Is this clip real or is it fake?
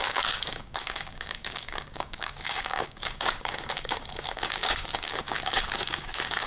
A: fake